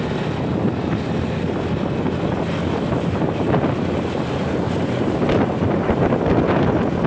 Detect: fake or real real